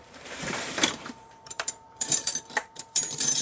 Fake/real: fake